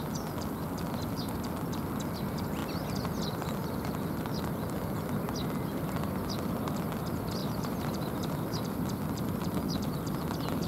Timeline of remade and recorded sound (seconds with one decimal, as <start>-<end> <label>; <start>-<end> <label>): 0.0-7.4 recorded; 7.4-8.3 remade; 8.3-10.7 recorded